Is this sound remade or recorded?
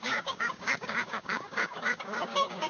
remade